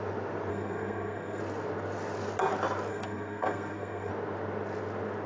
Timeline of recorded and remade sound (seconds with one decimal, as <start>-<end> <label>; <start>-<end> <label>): 0.0-0.5 recorded; 0.5-1.4 remade; 1.4-2.9 recorded; 2.9-4.1 remade; 4.1-5.3 recorded